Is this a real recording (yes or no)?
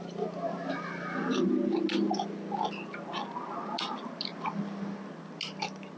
yes